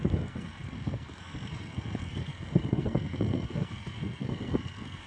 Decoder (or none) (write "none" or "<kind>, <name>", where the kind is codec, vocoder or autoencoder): codec, SNAC